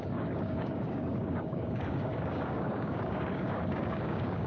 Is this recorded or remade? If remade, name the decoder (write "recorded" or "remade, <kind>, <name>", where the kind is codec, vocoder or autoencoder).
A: remade, codec, DAC